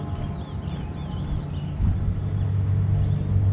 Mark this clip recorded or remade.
recorded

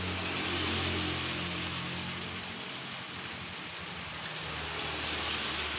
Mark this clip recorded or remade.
recorded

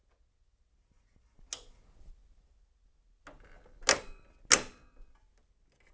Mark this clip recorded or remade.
recorded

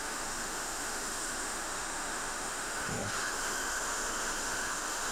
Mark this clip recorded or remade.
remade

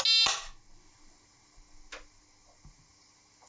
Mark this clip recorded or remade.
recorded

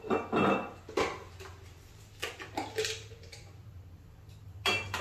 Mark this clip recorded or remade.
recorded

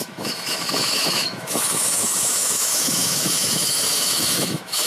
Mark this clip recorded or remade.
remade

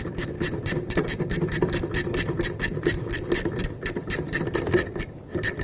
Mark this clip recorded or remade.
recorded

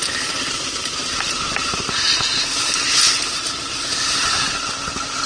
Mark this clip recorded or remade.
recorded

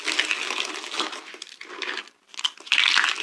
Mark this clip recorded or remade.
recorded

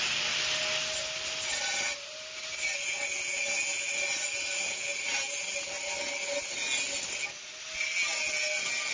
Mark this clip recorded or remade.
recorded